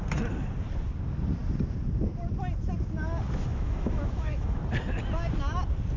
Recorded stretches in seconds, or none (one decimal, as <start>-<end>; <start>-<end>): 0.0-3.5; 4.6-6.0